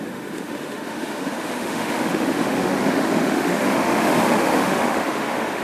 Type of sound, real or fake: fake